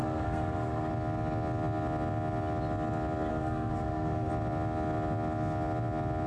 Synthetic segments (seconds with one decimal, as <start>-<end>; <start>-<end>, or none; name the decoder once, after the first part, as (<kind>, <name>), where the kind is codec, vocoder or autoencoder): 0.0-0.9 (codec, SNAC); 3.3-4.3

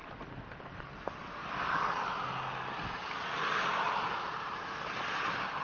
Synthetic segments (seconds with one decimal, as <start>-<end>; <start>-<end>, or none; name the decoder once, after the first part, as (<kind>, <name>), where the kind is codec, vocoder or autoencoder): none

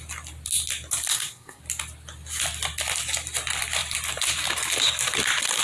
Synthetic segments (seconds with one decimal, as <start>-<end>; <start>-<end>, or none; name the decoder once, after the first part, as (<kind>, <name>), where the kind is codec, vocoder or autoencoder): 1.1-1.6 (codec, SNAC)

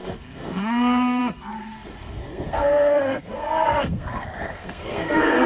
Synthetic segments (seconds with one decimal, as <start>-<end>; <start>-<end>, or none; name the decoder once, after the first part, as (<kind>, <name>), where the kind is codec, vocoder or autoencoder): 0.0-5.5 (codec, SNAC)